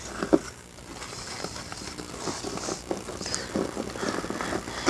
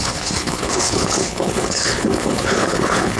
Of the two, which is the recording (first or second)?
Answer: first